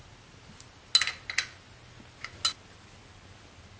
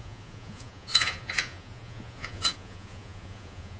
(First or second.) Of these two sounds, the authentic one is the first